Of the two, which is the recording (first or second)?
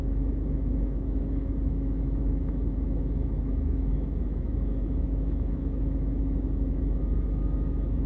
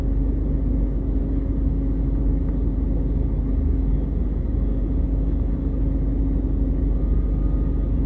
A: second